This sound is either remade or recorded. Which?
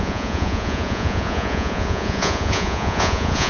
remade